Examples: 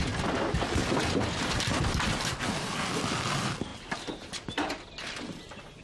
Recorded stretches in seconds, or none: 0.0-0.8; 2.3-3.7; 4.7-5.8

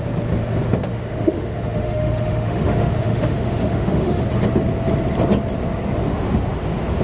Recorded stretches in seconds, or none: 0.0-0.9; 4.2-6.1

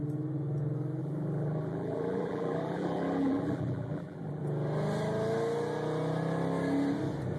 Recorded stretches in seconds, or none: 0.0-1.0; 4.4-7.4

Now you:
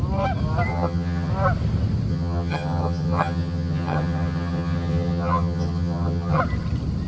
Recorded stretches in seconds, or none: 0.0-0.7; 1.3-2.1; 6.4-7.1

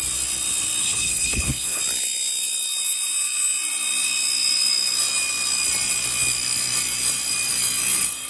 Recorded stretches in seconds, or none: 0.0-0.8; 1.8-8.3